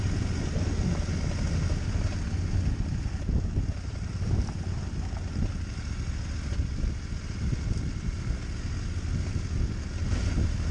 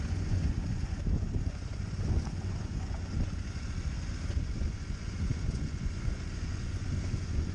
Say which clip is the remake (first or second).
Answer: second